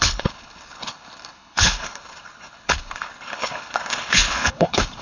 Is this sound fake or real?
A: fake